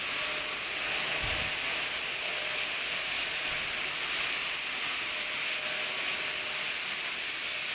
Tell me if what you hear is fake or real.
real